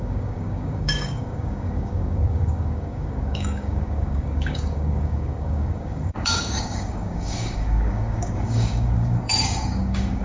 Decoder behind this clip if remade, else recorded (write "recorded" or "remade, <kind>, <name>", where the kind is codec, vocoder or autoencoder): remade, codec, DAC